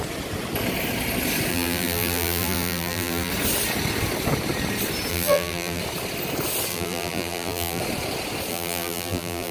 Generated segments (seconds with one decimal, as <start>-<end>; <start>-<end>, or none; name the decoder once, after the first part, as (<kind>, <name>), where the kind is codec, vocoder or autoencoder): 1.5-3.3 (vocoder, BigVGAN v2); 5.1-5.8; 6.7-7.8; 8.5-9.5